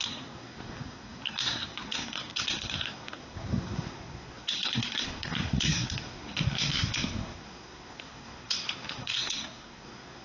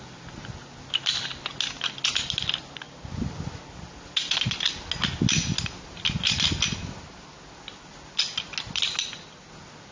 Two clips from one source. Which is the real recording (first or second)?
second